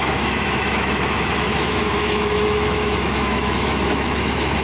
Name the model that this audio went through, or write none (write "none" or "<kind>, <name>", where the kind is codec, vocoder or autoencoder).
autoencoder, DAC-VAE